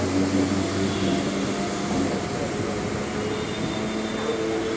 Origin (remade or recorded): recorded